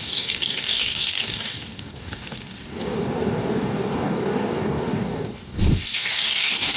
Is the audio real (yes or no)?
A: no